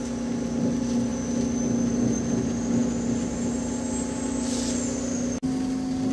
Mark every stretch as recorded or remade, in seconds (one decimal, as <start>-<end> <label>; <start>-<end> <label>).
0.0-6.1 recorded